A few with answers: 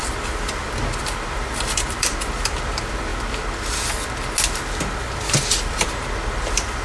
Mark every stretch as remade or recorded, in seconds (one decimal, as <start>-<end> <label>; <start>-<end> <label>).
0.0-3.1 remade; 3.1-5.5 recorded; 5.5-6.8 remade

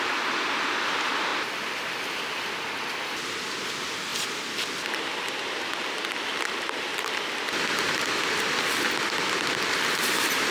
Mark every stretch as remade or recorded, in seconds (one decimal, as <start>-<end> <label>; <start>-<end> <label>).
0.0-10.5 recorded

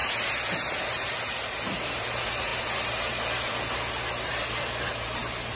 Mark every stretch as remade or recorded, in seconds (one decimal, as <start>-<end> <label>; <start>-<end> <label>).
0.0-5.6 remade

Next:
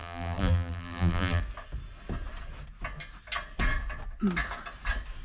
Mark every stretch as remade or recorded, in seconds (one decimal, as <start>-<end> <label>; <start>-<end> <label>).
0.0-1.4 remade; 1.4-5.2 recorded

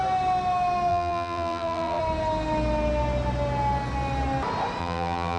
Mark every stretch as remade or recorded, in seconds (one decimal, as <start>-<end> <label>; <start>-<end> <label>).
0.0-0.9 recorded; 0.9-2.0 remade; 2.0-4.8 recorded; 4.8-5.4 remade

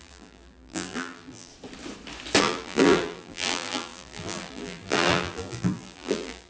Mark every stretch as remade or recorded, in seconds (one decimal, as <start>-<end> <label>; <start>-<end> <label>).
0.0-1.5 remade; 1.5-2.4 recorded; 2.4-6.5 remade

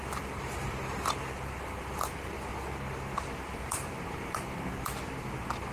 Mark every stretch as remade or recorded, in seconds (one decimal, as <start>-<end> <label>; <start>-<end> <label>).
0.0-2.5 remade; 2.5-3.2 recorded; 3.2-5.7 remade

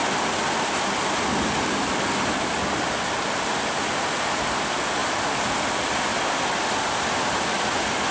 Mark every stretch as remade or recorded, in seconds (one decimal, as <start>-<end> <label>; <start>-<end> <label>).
0.0-5.0 recorded; 5.0-7.0 remade; 7.0-8.1 recorded